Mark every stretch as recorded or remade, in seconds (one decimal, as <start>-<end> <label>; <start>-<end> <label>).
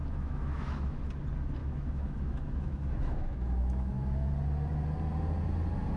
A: 0.0-1.0 remade; 1.0-1.6 recorded; 1.6-4.3 remade; 4.3-6.0 recorded